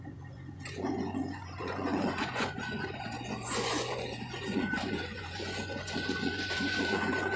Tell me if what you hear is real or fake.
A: fake